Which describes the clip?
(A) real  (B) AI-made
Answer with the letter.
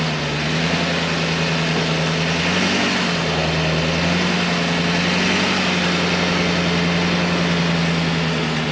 A